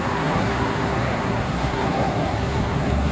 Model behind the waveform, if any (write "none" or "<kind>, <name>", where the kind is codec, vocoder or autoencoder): codec, SNAC